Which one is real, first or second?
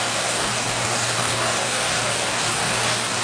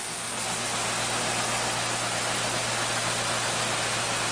second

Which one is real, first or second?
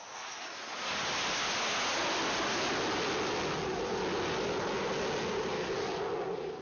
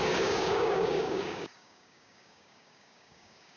first